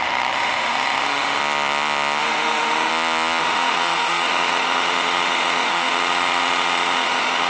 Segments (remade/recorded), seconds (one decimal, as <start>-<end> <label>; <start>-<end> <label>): 0.0-1.4 remade; 1.4-2.2 recorded; 2.2-2.9 remade; 2.9-3.4 recorded; 3.4-7.5 remade